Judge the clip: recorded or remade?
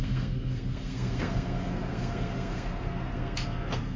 remade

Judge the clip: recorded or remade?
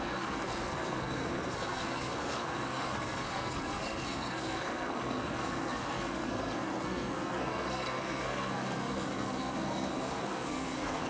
remade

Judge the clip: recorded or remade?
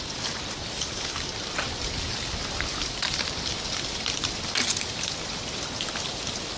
recorded